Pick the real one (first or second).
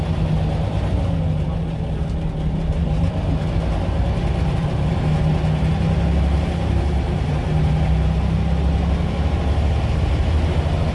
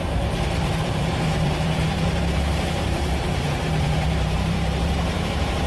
first